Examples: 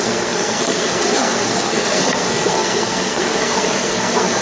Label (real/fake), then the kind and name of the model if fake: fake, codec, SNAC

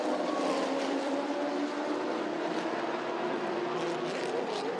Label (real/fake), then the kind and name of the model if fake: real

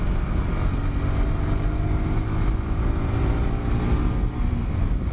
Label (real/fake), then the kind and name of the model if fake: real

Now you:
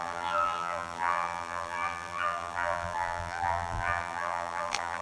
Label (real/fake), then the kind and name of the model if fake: fake, vocoder, BigVGAN v2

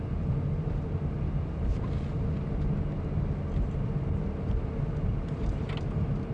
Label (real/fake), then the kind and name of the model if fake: real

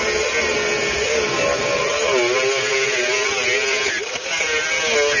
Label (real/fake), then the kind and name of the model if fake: real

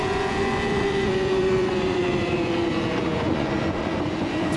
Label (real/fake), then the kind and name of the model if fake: fake, vocoder, Vocos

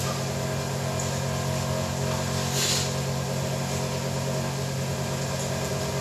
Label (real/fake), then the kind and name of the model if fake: real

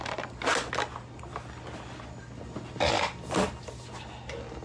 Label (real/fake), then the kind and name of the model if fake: real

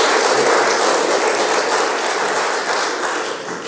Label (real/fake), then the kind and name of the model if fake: real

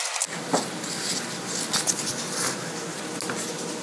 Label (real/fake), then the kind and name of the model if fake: real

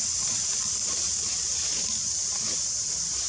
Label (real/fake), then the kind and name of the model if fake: real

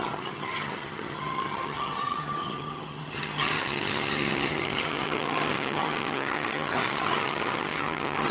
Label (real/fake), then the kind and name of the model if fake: fake, vocoder, HiFi-GAN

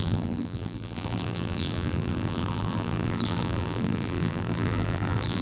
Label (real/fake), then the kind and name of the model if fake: fake, vocoder, BigVGAN v2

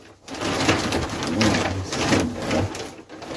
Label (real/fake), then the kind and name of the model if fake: real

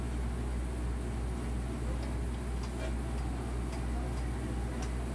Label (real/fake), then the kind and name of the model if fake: real